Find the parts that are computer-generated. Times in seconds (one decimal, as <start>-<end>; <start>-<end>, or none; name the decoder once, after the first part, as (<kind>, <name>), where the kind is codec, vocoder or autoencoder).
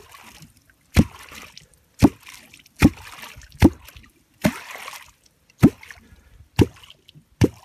none